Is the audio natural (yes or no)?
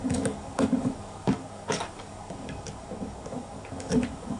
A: no